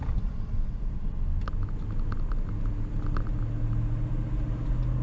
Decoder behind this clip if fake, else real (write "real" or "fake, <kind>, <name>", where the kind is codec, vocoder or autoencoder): real